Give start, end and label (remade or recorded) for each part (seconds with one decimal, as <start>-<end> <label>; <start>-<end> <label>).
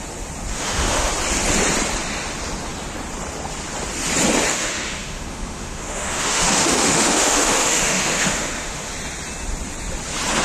0.0-0.5 recorded; 0.5-1.1 remade; 1.1-4.5 recorded; 4.5-8.9 remade; 8.9-10.4 recorded